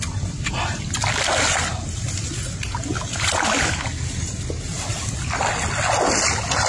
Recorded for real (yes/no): yes